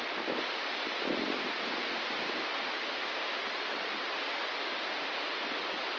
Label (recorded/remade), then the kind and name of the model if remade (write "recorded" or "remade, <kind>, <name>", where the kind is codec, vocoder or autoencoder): recorded